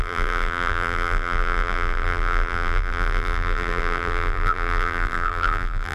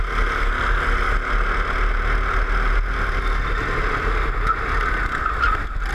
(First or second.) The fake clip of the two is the first